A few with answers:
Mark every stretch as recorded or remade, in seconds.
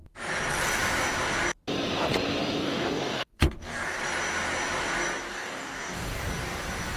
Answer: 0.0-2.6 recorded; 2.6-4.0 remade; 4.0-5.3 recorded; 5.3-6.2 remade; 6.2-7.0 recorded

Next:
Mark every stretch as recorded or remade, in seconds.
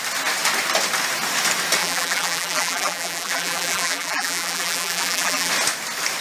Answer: 0.0-1.8 recorded; 1.8-5.5 remade; 5.5-6.2 recorded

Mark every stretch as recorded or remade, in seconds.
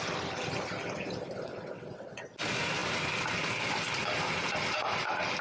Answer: 0.0-1.4 recorded; 1.4-2.3 remade; 2.3-5.4 recorded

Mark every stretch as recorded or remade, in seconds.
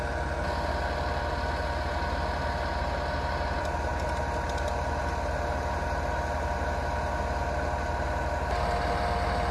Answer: 0.0-9.5 recorded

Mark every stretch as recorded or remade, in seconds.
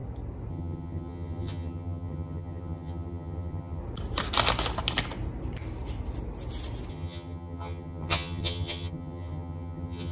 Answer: 0.0-0.5 recorded; 0.5-3.8 remade; 3.8-6.9 recorded; 6.9-10.1 remade